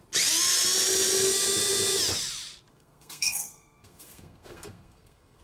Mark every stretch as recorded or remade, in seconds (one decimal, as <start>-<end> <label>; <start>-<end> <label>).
0.0-2.7 recorded; 2.7-5.4 remade